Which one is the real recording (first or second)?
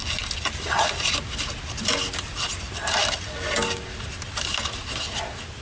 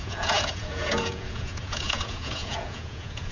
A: first